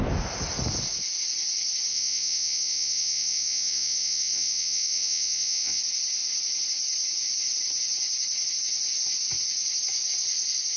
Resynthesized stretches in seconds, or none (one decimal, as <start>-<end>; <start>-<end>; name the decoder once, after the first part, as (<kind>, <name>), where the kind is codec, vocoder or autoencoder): 1.9-5.8 (vocoder, Vocos)